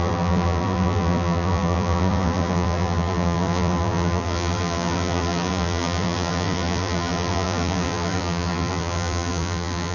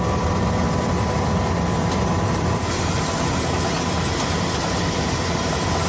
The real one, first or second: second